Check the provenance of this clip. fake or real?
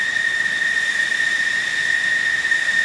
real